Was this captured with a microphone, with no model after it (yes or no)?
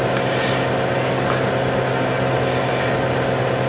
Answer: yes